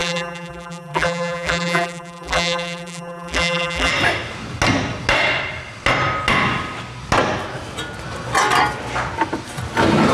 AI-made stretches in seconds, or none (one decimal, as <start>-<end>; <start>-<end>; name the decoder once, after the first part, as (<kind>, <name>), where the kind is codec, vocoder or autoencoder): 0.0-3.9 (vocoder, BigVGAN v2)